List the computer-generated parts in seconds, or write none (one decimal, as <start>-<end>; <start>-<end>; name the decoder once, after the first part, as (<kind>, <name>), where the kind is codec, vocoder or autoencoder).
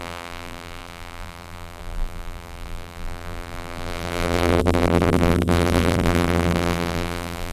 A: 0.0-7.5 (vocoder, BigVGAN v2)